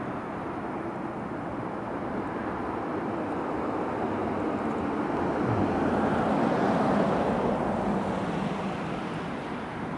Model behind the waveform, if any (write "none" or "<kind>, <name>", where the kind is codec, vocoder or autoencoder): none